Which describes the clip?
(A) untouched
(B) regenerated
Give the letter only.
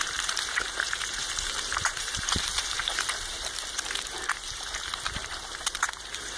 B